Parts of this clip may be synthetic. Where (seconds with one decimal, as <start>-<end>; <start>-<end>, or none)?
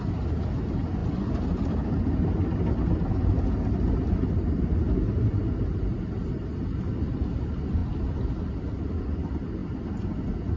none